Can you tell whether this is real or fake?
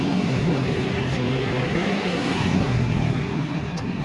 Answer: fake